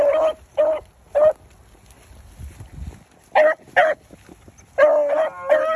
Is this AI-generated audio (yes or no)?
no